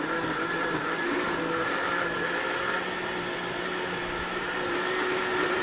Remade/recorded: recorded